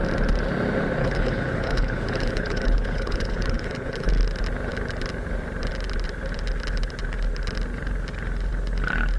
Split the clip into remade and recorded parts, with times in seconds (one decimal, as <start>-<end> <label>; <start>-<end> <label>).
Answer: 0.0-1.0 recorded; 1.0-4.1 remade; 4.1-9.2 recorded